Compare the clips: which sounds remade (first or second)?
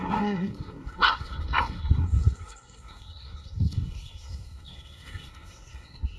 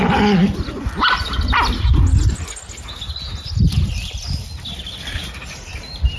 first